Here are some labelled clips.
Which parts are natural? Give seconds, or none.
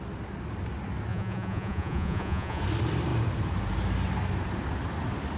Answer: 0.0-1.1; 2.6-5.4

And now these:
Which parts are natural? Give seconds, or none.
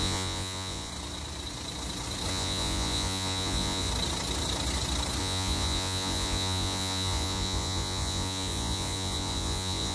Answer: 0.9-2.3; 3.9-5.2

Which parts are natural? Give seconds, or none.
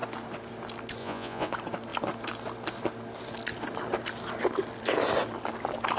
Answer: 0.0-1.0; 1.5-6.0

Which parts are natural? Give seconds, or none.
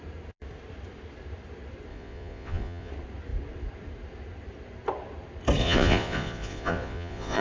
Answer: 0.0-1.9; 2.9-5.6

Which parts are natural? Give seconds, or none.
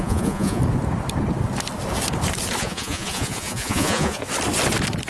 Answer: 0.6-2.6; 4.2-5.1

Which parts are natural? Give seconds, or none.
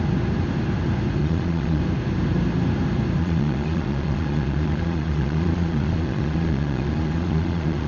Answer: 0.0-1.2; 1.8-3.2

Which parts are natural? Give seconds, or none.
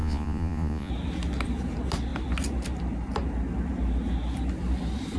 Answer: 0.9-5.2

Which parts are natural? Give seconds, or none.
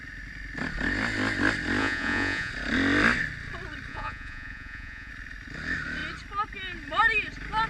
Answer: 0.0-1.8; 2.5-3.9; 5.1-7.7